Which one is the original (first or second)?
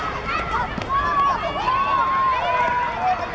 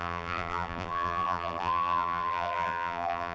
first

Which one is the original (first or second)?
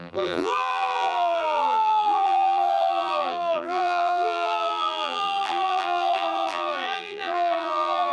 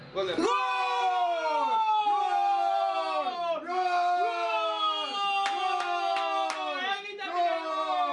second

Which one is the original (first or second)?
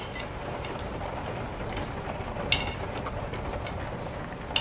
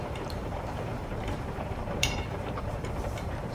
first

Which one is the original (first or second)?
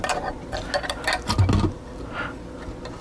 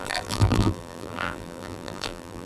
first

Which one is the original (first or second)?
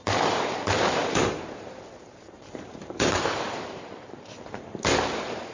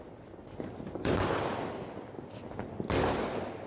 second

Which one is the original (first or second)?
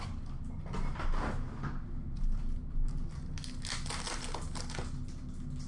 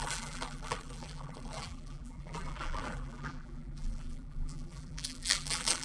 first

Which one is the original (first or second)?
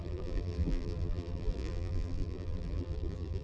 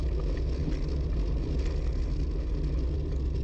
second